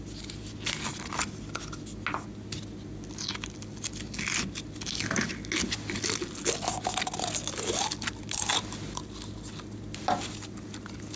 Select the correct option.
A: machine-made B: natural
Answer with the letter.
B